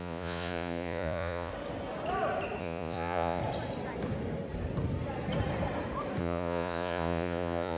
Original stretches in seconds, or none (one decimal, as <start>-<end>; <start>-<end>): 1.5-2.6; 3.4-6.2